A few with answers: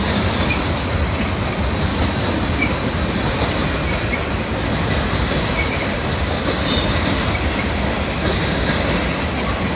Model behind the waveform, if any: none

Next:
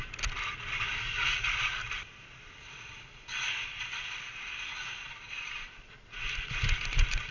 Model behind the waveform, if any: none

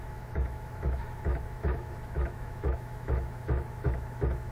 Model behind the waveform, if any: autoencoder, DAC-VAE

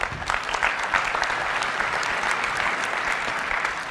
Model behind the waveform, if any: none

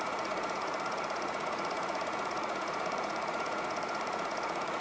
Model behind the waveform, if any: vocoder, Vocos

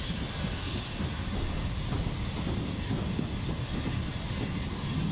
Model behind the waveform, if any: none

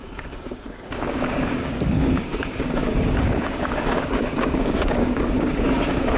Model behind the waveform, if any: codec, DAC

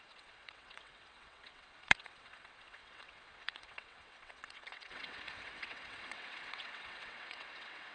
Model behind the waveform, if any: vocoder, WaveNeXt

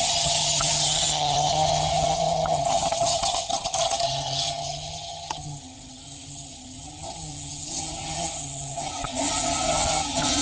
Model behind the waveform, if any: vocoder, HiFi-GAN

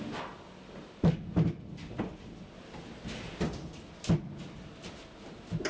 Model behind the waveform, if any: none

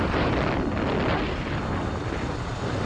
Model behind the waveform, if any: none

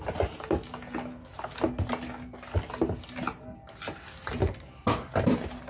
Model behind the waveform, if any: none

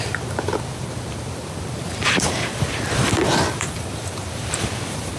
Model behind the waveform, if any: vocoder, BigVGAN v2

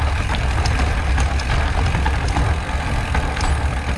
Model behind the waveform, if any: none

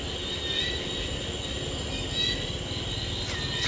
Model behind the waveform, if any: none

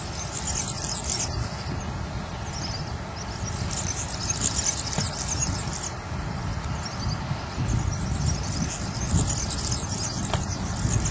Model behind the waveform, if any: none